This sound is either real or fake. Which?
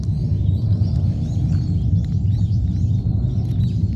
real